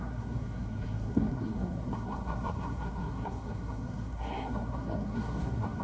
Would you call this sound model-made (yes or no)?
yes